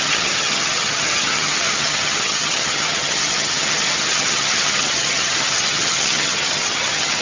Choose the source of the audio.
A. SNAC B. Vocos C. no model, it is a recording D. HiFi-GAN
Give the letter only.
D